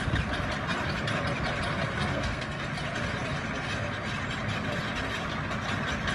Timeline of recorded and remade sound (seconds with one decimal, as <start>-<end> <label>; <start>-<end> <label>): 0.0-2.1 recorded; 2.1-2.6 remade; 2.6-6.1 recorded